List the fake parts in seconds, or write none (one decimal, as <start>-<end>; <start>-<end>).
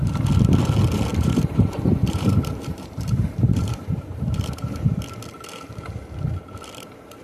1.1-4.9